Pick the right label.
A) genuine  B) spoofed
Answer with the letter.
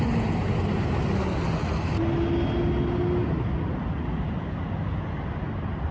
A